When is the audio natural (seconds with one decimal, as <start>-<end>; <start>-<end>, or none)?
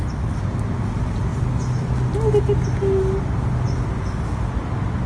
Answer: 0.0-5.1